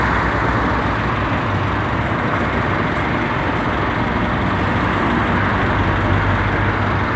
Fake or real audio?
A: real